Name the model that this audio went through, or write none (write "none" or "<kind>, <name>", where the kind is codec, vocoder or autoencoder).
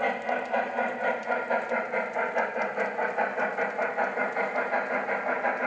none